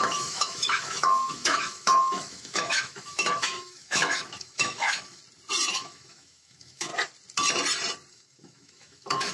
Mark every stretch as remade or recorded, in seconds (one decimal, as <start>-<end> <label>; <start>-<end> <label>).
0.0-5.2 remade; 5.2-5.7 recorded; 5.7-6.9 remade; 6.9-8.1 recorded; 8.1-9.3 remade